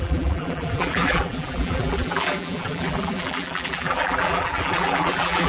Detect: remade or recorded remade